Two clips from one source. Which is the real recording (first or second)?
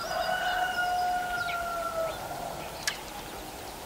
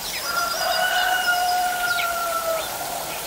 first